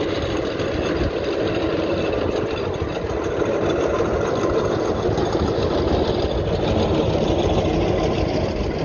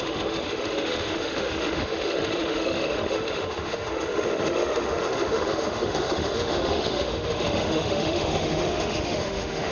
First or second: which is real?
first